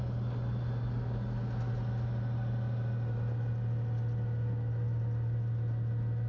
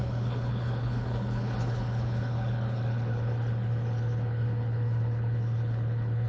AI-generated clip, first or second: second